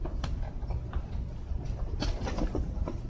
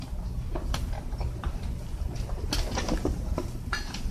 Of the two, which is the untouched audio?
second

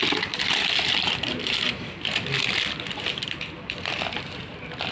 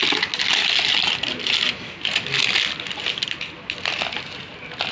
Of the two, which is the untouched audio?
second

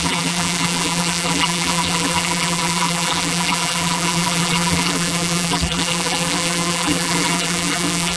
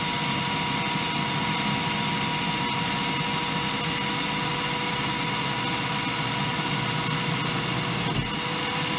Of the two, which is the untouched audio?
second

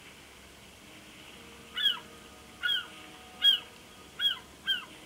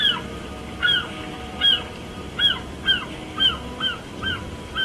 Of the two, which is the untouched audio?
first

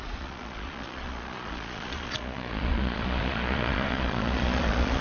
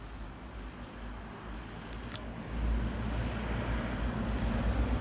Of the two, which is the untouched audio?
second